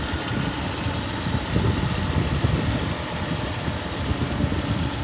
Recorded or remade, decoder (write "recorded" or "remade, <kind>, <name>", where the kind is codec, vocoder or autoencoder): recorded